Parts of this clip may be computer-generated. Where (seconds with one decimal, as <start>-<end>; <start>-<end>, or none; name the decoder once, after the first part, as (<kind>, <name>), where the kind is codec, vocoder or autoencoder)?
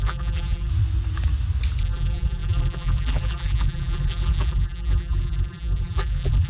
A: 0.0-0.7 (vocoder, BigVGAN v2); 1.8-6.5